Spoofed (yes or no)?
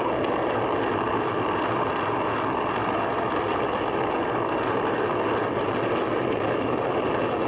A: no